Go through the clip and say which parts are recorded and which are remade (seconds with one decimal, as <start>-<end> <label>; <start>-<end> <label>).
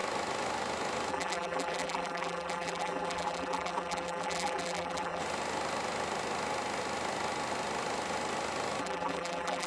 0.0-1.1 recorded; 1.1-5.2 remade; 5.2-8.8 recorded; 8.8-9.7 remade